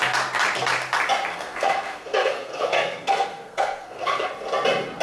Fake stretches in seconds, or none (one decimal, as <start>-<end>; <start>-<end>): 1.3-4.3

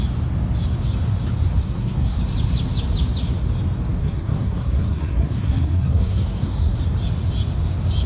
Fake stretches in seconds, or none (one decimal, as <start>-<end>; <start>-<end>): 1.6-2.2; 4.0-6.8